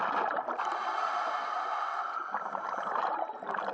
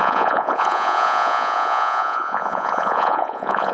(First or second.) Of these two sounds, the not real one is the second